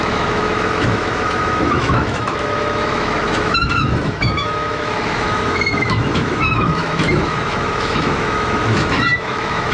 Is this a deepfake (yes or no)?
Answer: yes